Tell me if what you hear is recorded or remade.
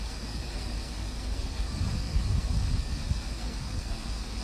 remade